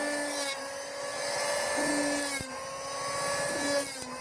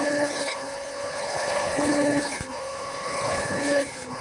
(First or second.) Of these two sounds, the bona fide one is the first